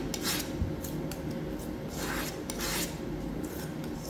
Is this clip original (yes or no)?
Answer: yes